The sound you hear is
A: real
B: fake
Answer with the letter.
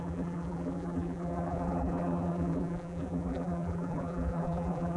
B